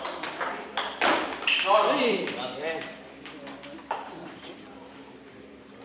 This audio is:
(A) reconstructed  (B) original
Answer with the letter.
A